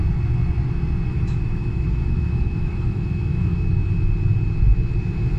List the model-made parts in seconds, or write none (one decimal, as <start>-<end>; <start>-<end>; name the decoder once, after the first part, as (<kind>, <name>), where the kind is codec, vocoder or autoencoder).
1.1-3.8 (autoencoder, DAC-VAE)